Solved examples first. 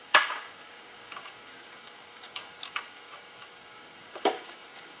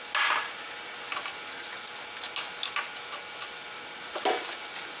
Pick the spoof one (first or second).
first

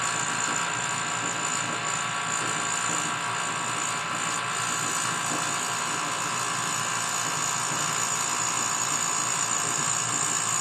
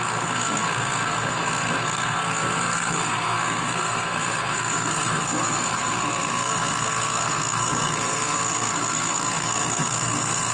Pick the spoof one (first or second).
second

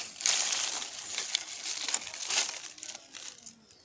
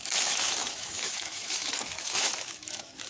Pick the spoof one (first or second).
second